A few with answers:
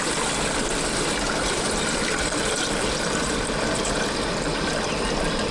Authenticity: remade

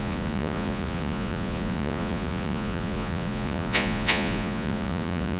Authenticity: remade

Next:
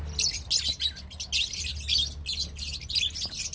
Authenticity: recorded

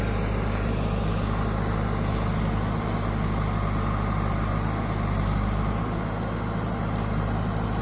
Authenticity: recorded